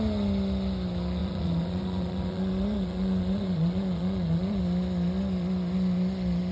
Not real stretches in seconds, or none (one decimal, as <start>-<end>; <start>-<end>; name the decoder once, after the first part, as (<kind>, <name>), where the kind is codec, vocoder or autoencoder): 1.2-4.6 (vocoder, Vocos)